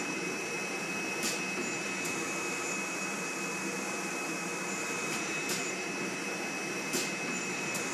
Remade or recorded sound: remade